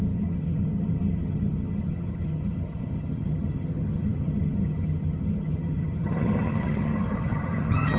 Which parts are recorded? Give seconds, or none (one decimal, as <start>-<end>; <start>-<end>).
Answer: none